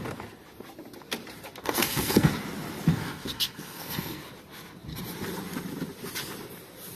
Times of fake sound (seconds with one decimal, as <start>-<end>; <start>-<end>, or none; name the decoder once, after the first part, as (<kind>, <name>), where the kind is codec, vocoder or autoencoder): 1.6-2.3 (codec, SNAC); 2.9-4.2